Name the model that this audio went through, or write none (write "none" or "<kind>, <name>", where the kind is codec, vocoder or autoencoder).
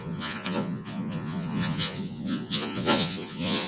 vocoder, Vocos